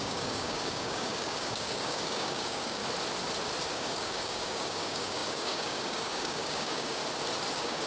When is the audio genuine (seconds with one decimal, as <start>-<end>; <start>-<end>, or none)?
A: 2.8-3.7; 7.0-7.5